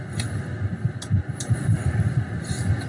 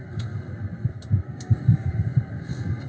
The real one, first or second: first